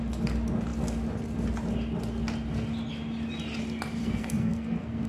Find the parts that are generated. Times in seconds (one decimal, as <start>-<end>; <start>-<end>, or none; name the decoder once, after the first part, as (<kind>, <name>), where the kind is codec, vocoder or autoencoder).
4.0-5.1 (codec, SNAC)